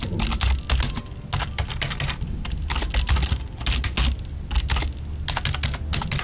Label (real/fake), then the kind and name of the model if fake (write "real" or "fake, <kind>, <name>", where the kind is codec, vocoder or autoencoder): real